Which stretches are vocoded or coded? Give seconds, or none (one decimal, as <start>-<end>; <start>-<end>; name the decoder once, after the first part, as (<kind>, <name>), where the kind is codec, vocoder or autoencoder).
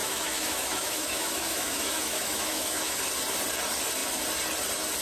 0.0-3.0 (autoencoder, DAC-VAE)